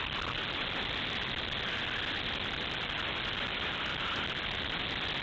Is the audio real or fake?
real